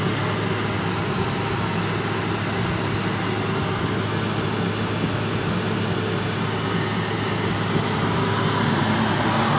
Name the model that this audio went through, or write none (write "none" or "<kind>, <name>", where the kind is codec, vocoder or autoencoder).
none